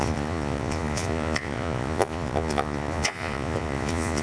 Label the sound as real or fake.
fake